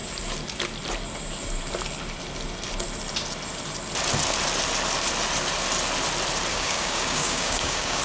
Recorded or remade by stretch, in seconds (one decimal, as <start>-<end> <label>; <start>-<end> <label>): 0.0-6.5 recorded; 6.5-8.0 remade

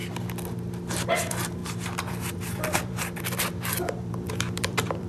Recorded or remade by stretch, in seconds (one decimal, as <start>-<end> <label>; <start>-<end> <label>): 0.0-1.1 recorded; 1.1-5.1 remade

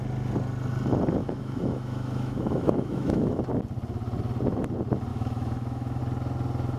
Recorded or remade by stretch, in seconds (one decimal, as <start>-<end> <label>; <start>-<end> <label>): 0.0-1.2 recorded; 1.2-3.4 remade; 3.4-5.1 recorded; 5.1-6.0 remade; 6.0-6.8 recorded

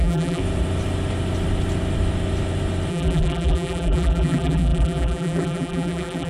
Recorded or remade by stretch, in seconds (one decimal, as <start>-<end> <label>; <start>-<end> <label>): 0.0-0.4 remade; 0.4-2.9 recorded; 2.9-6.3 remade

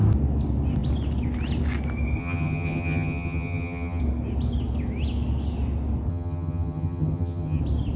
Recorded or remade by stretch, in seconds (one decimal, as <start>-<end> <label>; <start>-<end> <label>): 0.0-2.2 recorded; 2.2-4.0 remade; 4.0-6.1 recorded; 6.1-7.6 remade; 7.6-8.0 recorded